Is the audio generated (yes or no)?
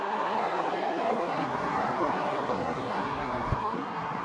yes